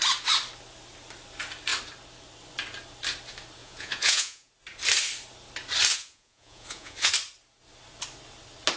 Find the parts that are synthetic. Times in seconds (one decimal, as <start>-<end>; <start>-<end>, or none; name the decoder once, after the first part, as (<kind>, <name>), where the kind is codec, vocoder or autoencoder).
3.6-4.5 (vocoder, Vocos); 5.9-7.1